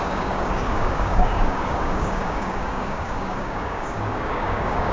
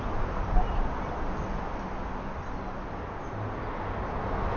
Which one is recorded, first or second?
second